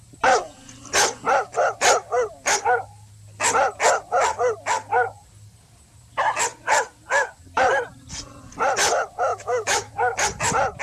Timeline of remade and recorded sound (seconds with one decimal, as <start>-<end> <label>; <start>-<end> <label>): 0.0-9.3 recorded; 9.3-9.9 remade; 9.9-10.8 recorded